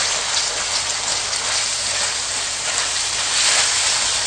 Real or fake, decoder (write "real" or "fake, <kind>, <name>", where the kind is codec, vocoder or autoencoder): real